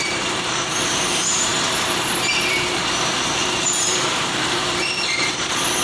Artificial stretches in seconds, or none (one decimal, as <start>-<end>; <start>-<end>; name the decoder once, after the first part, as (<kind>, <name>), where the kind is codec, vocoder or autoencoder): 0.0-5.8 (vocoder, BigVGAN v2)